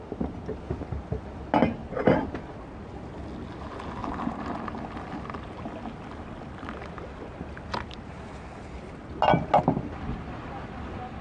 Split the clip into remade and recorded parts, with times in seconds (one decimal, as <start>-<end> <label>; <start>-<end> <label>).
0.0-4.0 recorded; 4.0-4.5 remade; 4.5-11.2 recorded